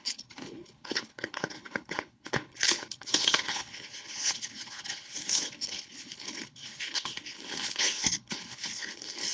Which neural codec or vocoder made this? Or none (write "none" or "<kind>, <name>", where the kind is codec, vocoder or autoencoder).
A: codec, HILCodec